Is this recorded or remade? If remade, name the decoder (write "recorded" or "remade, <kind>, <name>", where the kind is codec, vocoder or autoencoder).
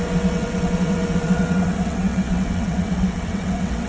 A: remade, vocoder, WaveNeXt